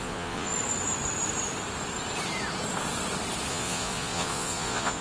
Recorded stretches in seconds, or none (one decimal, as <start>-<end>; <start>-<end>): 0.5-3.5